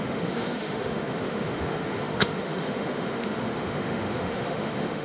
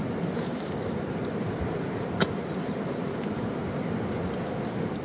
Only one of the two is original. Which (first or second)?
second